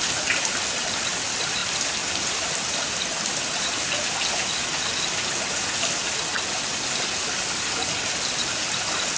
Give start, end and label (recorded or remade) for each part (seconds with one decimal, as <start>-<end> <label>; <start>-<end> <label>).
0.0-9.2 recorded